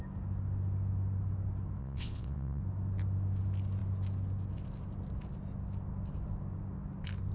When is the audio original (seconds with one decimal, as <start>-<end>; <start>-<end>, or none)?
0.0-1.8; 2.6-7.3